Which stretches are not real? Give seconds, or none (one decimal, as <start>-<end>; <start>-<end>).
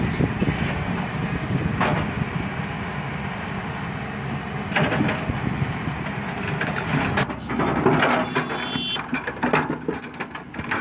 none